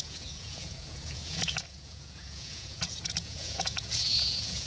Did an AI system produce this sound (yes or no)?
yes